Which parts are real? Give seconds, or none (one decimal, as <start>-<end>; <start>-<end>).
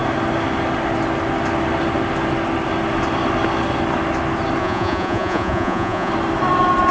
0.0-4.6; 6.1-6.9